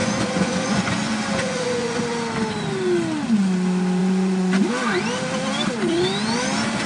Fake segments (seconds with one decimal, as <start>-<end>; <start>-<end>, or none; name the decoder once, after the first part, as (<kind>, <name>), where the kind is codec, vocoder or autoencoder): 0.0-2.0 (vocoder, Vocos); 4.0-4.6